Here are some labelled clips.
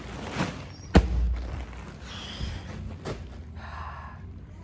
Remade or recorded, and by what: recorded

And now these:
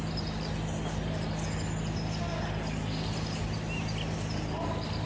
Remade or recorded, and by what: recorded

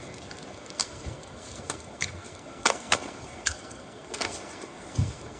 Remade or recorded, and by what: remade, codec, SNAC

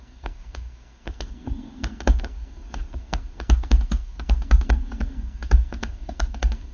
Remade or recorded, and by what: remade, codec, SNAC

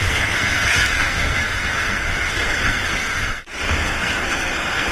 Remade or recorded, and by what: remade, codec, SNAC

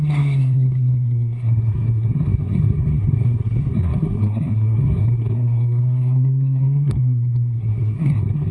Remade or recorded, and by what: remade, codec, SNAC